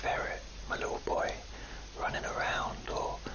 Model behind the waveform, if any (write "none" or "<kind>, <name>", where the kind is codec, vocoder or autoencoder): none